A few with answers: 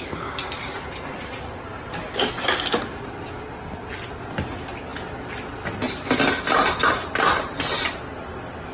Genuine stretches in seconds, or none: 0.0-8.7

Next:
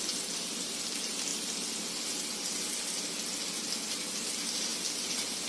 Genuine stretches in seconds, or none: 0.0-5.5